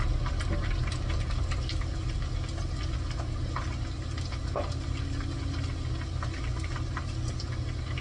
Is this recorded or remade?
recorded